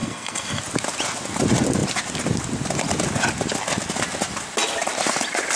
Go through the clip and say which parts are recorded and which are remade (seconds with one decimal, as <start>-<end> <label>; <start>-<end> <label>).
0.0-0.6 remade; 0.6-5.6 recorded